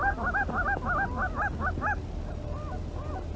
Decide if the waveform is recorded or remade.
recorded